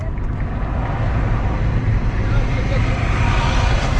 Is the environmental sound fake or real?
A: real